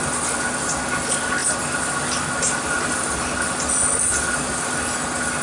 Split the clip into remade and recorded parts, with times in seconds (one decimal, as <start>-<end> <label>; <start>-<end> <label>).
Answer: 0.0-5.4 recorded